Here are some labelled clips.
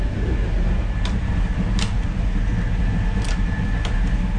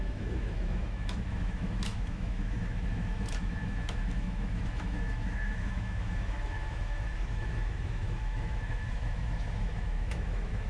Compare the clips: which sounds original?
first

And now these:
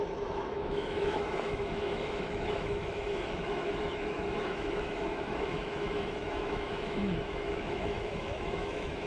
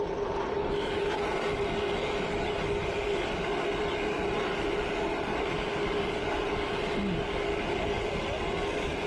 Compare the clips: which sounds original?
second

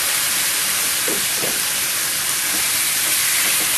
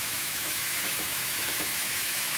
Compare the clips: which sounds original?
first